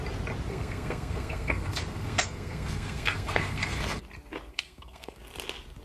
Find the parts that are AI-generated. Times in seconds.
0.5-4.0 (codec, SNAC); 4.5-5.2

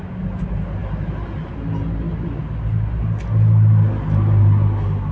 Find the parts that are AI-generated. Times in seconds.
none